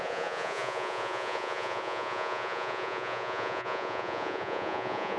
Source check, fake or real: fake